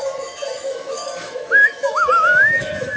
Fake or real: fake